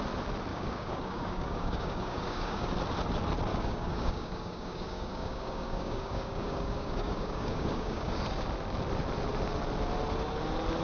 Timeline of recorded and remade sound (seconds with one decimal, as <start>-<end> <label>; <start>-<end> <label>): 0.0-0.5 recorded; 0.5-2.7 remade; 2.7-3.5 recorded; 3.5-8.2 remade; 8.2-10.8 recorded